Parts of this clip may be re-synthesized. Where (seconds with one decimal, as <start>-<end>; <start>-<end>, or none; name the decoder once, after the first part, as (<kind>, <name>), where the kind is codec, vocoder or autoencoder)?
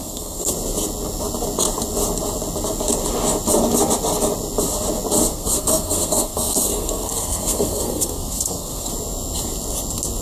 0.0-0.5 (codec, SNAC); 5.3-8.9